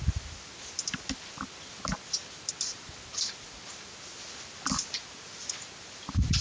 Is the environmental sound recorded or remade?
recorded